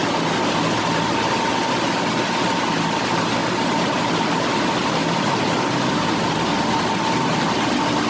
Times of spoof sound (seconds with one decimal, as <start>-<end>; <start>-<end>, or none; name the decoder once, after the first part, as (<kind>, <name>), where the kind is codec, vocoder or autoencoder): 5.0-8.1 (vocoder, BigVGAN v2)

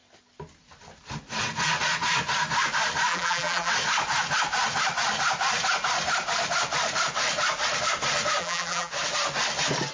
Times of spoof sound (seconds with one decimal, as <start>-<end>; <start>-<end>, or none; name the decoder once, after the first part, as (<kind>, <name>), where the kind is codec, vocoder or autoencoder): 3.1-3.7 (vocoder, BigVGAN v2); 8.4-8.9

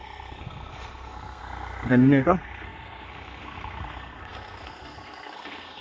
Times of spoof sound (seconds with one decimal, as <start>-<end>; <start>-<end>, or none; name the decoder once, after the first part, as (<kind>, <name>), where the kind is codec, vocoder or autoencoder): 0.0-5.8 (codec, SNAC)